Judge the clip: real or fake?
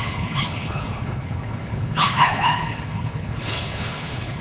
fake